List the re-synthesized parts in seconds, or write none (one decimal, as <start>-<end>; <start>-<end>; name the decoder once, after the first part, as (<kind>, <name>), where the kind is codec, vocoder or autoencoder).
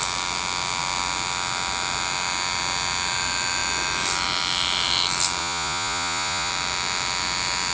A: 5.4-6.5 (vocoder, Vocos)